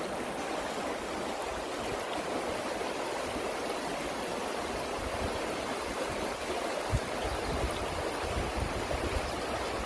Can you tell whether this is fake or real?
real